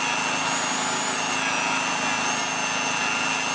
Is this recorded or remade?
recorded